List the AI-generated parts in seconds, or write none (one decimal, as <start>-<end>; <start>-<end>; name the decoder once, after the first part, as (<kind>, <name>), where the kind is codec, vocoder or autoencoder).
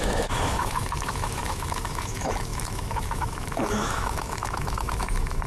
0.0-5.5 (autoencoder, DAC-VAE)